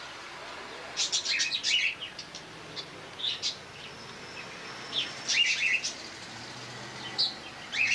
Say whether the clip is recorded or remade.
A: recorded